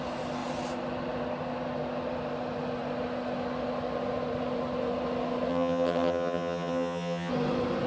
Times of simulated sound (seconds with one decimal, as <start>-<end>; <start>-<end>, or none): 5.5-7.3